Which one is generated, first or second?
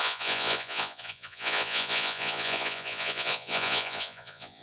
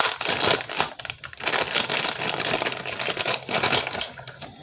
first